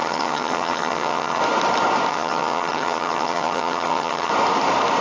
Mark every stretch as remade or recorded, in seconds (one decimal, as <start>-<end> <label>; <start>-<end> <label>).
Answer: 0.0-1.4 remade; 1.4-2.1 recorded; 2.1-4.3 remade; 4.3-5.0 recorded